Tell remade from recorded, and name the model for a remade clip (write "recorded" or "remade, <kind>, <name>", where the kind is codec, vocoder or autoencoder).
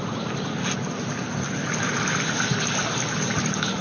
recorded